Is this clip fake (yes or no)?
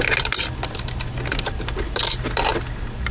no